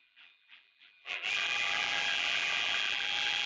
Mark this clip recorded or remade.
remade